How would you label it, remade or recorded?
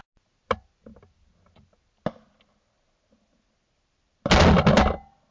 recorded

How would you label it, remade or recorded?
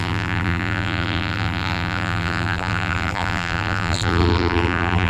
remade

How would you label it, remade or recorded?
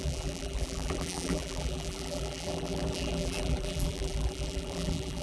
remade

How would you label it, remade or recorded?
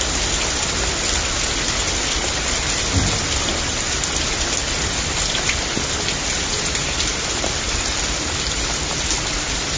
recorded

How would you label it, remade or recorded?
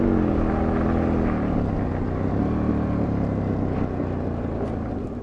recorded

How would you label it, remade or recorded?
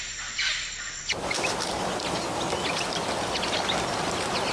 recorded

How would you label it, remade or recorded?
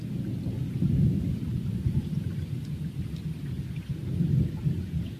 recorded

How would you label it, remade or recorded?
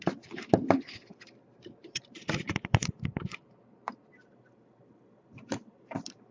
remade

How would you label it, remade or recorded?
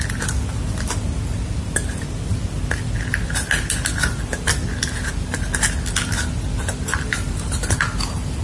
recorded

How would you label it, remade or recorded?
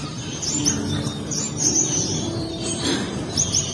remade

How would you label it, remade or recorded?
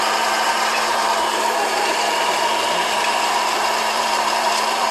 remade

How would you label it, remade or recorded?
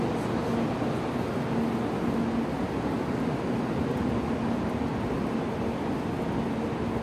recorded